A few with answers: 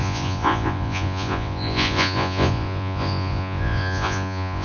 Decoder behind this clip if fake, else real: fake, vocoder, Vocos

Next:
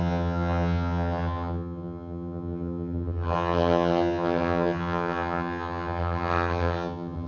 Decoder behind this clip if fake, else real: fake, vocoder, HiFi-GAN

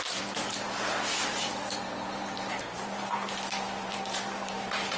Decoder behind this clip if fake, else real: fake, vocoder, BigVGAN v2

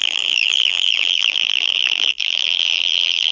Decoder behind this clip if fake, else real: fake, vocoder, BigVGAN v2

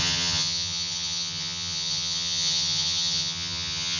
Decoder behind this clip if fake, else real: fake, vocoder, HiFi-GAN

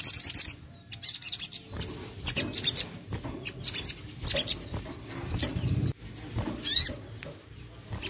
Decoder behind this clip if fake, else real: real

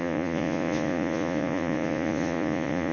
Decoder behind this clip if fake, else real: fake, vocoder, Vocos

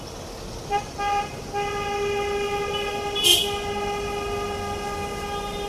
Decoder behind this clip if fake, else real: real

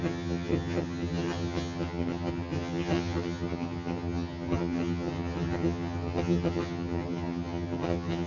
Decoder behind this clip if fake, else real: fake, vocoder, HiFi-GAN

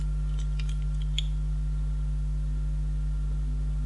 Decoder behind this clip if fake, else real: real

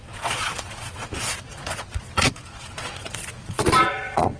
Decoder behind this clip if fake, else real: fake, vocoder, Vocos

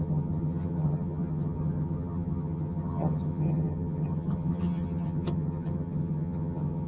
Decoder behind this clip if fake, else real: fake, vocoder, HiFi-GAN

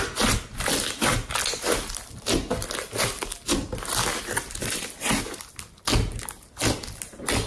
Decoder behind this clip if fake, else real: real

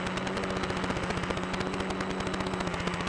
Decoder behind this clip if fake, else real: real